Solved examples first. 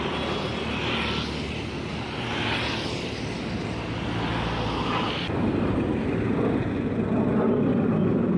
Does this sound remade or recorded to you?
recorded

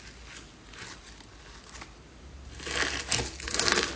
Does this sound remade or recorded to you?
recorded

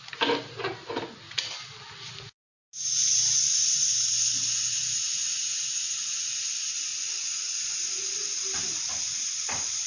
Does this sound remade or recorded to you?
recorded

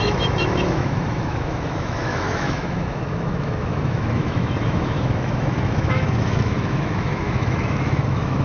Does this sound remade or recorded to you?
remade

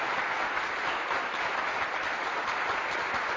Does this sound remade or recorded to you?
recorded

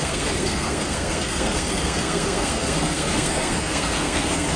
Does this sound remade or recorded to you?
remade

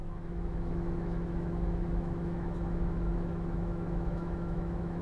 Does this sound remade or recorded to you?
remade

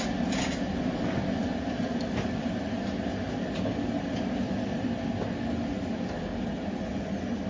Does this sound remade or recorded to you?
recorded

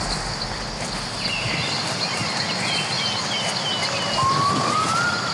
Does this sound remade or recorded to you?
recorded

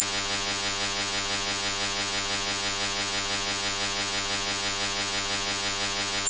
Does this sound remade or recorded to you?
remade